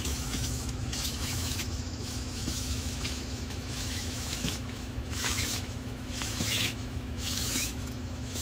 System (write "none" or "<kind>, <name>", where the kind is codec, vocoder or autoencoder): autoencoder, DAC-VAE